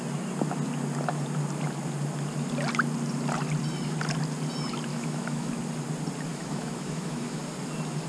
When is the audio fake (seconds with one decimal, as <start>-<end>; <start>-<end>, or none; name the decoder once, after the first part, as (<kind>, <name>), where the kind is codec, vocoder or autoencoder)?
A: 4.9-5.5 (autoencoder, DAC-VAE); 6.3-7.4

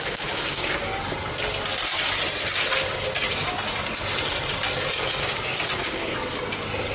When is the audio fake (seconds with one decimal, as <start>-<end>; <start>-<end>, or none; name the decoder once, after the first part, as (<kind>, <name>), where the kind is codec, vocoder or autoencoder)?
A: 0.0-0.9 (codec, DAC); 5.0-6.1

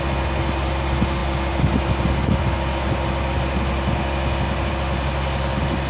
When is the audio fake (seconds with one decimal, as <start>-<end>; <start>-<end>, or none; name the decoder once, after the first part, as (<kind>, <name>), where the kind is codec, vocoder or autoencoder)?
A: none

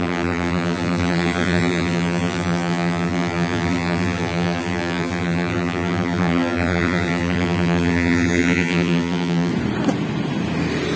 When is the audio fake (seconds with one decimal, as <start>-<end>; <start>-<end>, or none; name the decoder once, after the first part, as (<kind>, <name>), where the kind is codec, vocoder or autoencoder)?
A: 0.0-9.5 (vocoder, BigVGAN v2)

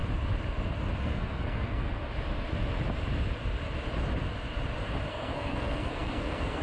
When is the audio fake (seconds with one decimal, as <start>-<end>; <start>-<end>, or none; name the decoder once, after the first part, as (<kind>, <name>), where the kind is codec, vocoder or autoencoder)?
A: 1.0-2.0 (codec, SNAC); 5.1-6.6

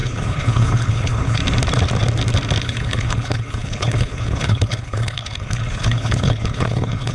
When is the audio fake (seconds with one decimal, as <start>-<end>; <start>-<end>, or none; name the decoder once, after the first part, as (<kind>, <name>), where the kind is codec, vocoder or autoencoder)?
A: 0.0-1.4 (codec, HILCodec); 2.6-7.1

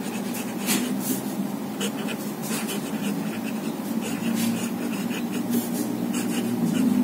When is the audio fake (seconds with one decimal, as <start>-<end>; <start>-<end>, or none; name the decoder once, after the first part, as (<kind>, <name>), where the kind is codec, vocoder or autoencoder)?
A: none

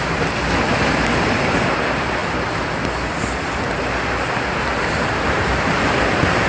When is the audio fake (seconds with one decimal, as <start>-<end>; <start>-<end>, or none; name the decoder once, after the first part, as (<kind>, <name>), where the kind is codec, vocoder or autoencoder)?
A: none